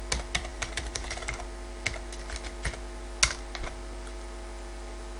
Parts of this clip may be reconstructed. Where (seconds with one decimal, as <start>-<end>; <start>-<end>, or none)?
0.5-1.4